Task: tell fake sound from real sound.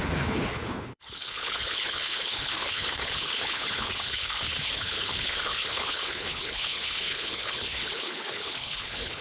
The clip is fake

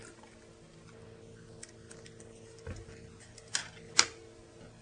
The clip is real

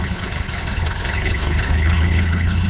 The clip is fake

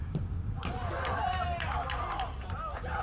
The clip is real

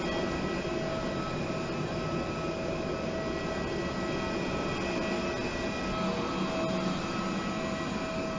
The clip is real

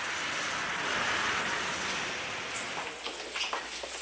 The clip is real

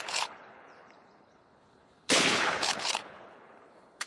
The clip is fake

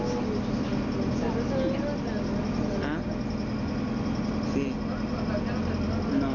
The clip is real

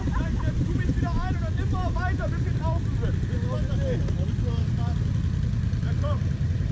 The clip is real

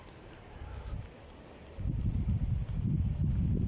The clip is real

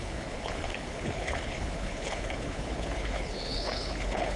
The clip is fake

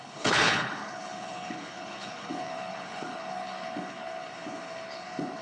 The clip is fake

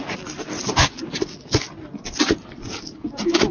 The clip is real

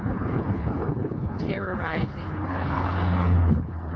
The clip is fake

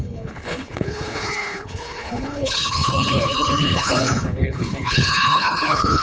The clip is fake